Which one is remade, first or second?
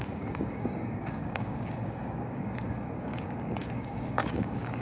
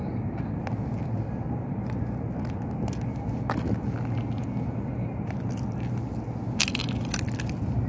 first